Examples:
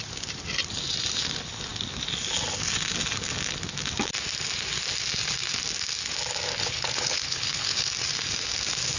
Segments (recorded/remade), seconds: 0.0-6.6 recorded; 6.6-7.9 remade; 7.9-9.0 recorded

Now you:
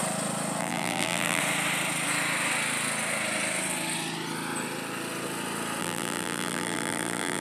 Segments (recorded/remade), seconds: 0.0-0.6 recorded; 0.6-1.4 remade; 1.4-5.8 recorded; 5.8-7.4 remade

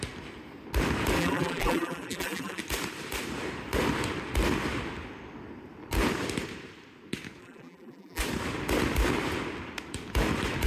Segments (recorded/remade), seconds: 0.0-1.2 recorded; 1.2-2.6 remade; 2.6-7.4 recorded; 7.4-8.2 remade; 8.2-10.7 recorded

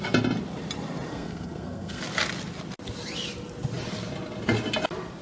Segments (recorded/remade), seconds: 0.0-1.1 recorded; 1.1-2.0 remade; 2.0-5.2 recorded

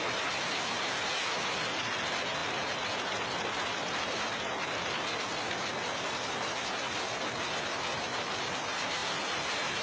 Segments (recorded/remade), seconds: 0.0-9.8 recorded

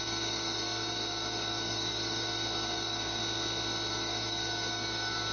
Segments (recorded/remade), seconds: 0.0-3.2 remade; 3.2-3.9 recorded; 3.9-5.3 remade

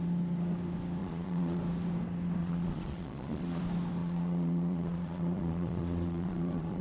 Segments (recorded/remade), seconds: 0.0-1.0 recorded; 1.0-1.6 remade; 1.6-2.4 recorded; 2.4-3.6 remade; 3.6-4.0 recorded; 4.0-6.8 remade

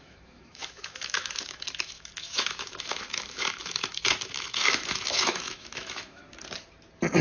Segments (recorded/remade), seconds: 0.0-6.2 remade; 6.2-7.2 recorded